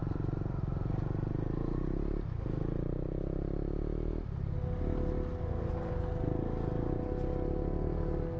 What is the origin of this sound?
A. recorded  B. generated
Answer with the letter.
A